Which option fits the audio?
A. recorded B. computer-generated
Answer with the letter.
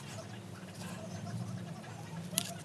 A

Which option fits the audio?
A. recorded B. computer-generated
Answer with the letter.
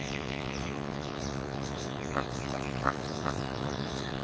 B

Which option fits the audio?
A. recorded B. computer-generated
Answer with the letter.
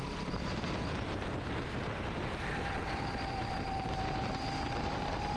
A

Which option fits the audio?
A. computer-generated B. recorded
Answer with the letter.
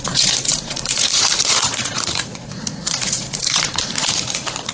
A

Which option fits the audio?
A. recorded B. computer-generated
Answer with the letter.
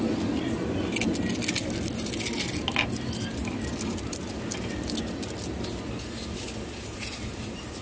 A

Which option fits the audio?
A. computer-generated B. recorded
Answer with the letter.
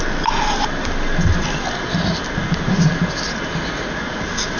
B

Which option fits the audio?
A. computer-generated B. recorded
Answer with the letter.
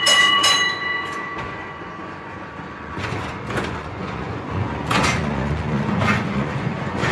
A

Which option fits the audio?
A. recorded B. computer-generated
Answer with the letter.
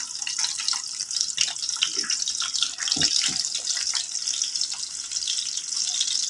A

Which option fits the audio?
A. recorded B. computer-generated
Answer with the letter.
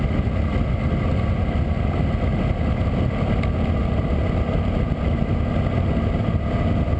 A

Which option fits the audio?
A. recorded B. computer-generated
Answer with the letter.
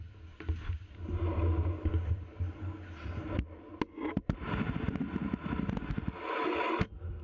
A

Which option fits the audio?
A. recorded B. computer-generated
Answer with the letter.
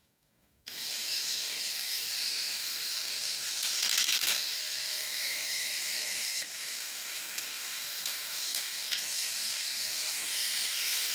B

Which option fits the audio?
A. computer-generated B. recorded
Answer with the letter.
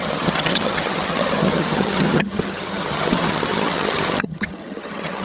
A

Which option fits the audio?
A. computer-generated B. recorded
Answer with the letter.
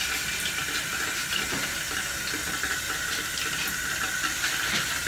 B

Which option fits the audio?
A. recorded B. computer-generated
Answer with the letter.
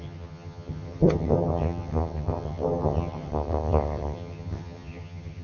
B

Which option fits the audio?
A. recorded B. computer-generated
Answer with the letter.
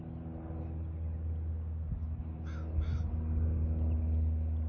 A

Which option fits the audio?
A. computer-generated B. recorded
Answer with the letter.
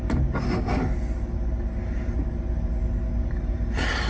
B